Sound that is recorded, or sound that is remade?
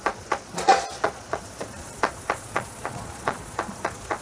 remade